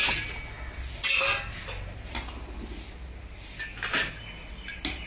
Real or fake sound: real